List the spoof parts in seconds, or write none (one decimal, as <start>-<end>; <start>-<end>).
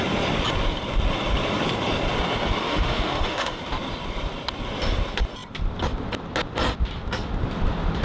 2.6-3.6